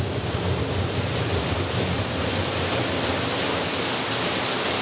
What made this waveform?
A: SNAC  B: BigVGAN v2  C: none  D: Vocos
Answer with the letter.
C